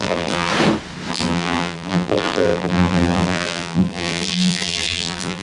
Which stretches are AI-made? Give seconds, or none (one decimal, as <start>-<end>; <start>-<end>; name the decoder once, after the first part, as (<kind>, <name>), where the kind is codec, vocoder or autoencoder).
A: 0.0-0.5 (vocoder, BigVGAN v2); 1.1-5.4